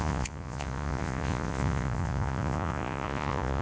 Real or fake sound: fake